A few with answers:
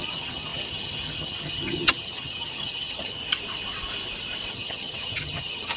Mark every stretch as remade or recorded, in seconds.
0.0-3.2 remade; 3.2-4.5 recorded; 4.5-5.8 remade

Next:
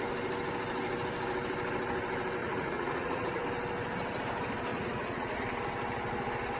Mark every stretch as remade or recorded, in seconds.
0.0-2.4 recorded; 2.4-3.4 remade; 3.4-4.7 recorded; 4.7-5.4 remade; 5.4-6.6 recorded

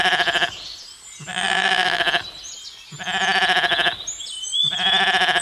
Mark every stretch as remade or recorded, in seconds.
0.0-1.3 recorded; 1.3-2.0 remade; 2.0-5.4 recorded